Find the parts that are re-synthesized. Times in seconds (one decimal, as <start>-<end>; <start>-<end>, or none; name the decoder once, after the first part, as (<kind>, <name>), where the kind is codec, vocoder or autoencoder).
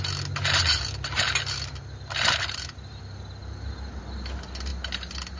none